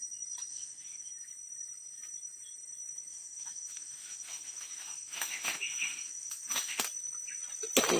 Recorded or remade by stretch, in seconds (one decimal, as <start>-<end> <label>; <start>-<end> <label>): 0.0-0.5 recorded; 0.5-1.1 remade; 1.1-3.1 recorded; 3.1-6.8 remade; 6.8-8.0 recorded